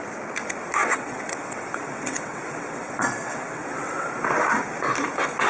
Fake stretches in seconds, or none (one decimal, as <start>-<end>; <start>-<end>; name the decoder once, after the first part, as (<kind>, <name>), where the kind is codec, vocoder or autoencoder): 0.8-4.1 (vocoder, WaveNeXt)